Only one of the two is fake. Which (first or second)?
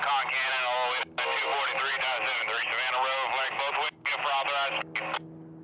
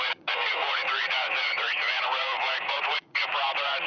second